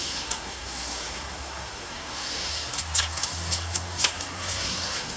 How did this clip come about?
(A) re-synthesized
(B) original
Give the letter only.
A